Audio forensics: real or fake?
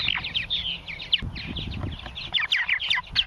real